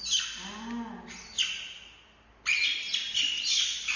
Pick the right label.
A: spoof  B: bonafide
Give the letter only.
B